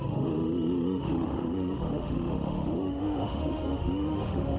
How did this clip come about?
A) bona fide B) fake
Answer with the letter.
B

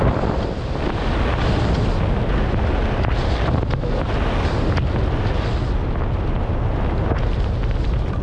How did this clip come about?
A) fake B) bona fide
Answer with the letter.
B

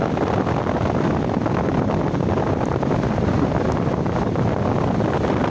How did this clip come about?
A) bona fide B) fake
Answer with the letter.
A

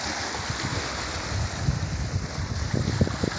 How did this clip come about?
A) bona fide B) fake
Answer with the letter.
A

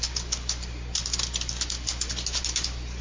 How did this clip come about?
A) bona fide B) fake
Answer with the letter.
A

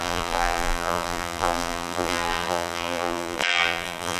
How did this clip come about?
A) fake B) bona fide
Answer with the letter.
A